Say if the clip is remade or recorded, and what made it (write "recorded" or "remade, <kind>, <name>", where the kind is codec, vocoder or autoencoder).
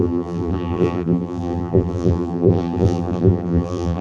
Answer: remade, vocoder, BigVGAN v2